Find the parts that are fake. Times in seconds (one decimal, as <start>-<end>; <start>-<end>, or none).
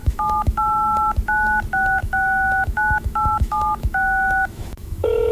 0.0-0.6; 2.0-5.3